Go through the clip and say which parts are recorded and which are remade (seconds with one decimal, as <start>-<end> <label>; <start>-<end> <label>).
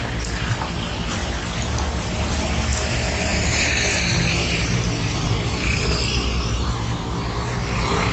0.0-8.1 recorded